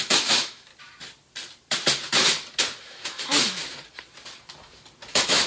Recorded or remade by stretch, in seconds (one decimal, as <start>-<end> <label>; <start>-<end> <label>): 0.0-0.7 remade; 0.7-2.8 recorded; 2.8-3.6 remade; 3.6-5.1 recorded; 5.1-5.5 remade